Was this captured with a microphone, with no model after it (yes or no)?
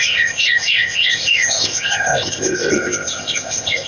no